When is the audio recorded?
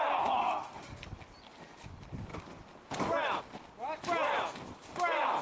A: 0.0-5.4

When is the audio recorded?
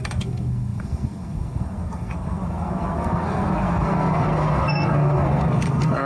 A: none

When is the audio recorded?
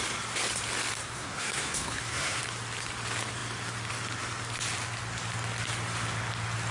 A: 0.0-1.0; 2.4-6.7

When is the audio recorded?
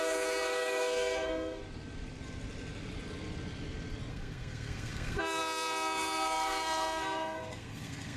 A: 1.6-4.1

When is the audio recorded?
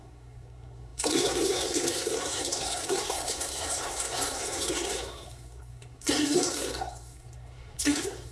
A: none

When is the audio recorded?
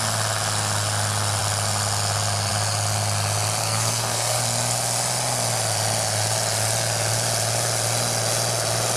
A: 0.0-3.6; 4.4-9.0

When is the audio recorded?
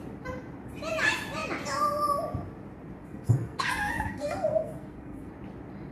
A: 0.0-3.0; 5.3-5.9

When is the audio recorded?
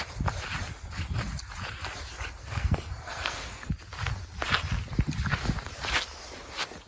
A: 0.0-2.4; 3.7-6.9